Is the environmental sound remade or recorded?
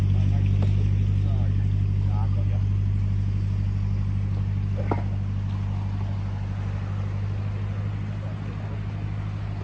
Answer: recorded